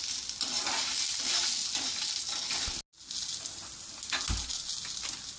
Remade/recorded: recorded